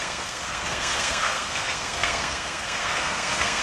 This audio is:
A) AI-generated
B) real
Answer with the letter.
A